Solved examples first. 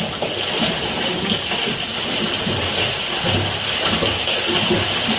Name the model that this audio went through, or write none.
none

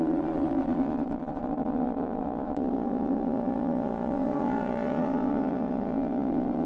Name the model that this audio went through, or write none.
vocoder, Vocos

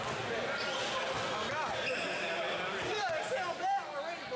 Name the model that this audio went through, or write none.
none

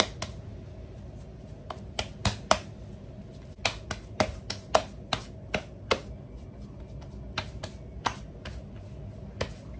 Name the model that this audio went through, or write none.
none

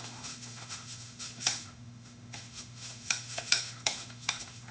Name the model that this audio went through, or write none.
autoencoder, DAC-VAE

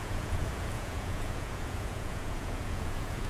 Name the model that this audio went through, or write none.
vocoder, Vocos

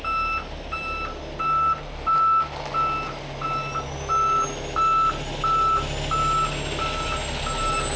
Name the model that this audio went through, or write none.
none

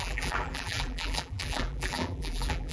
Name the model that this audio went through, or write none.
vocoder, BigVGAN v2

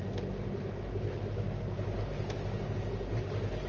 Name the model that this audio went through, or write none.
none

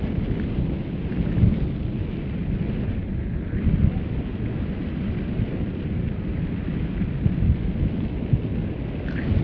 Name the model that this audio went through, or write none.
none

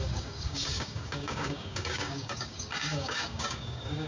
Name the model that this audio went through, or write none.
codec, DAC